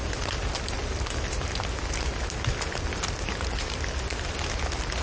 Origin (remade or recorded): recorded